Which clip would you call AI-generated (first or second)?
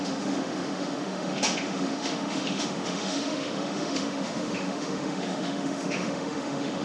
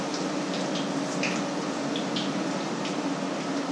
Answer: first